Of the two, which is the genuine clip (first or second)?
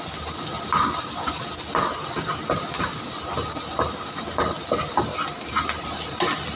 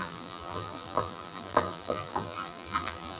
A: first